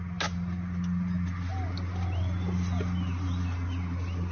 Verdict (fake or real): real